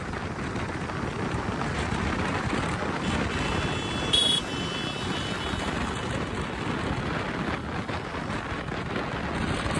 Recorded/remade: recorded